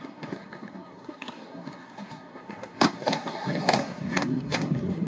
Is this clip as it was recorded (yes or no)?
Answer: no